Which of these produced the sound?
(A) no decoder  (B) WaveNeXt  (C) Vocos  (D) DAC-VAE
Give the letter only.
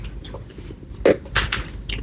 A